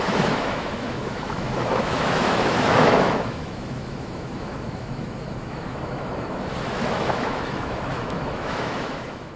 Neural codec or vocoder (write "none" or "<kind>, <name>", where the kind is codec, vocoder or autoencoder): autoencoder, DAC-VAE